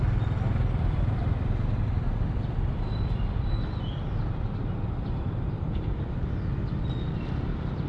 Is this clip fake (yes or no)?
no